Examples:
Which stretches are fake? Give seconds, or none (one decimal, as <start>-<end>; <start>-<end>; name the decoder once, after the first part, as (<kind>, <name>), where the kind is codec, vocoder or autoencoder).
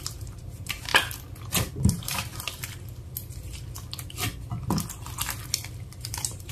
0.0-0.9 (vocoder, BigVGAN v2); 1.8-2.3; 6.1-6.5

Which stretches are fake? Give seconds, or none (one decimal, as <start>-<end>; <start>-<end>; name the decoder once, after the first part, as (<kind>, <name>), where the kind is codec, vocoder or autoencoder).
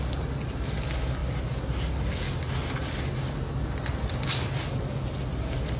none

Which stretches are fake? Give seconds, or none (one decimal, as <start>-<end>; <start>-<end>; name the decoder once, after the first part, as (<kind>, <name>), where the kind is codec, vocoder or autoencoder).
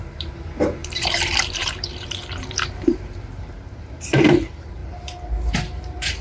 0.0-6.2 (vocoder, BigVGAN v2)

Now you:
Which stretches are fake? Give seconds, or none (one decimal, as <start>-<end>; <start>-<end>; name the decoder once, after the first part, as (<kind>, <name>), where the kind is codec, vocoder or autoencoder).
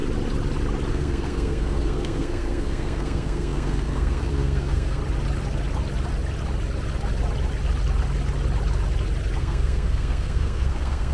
0.9-5.0 (codec, SNAC); 9.4-11.1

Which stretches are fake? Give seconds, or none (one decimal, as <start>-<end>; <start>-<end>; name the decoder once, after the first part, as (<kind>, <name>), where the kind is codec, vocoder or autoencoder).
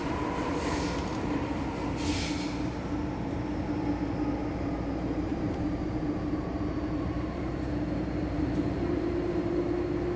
5.3-9.6 (vocoder, BigVGAN v2)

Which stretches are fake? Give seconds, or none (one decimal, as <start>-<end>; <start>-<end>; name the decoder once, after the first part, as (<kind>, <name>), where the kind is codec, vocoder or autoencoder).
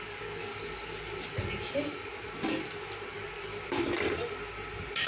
0.0-0.5 (codec, DAC); 3.1-3.5